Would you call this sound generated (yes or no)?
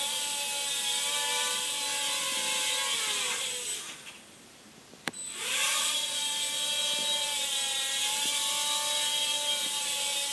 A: no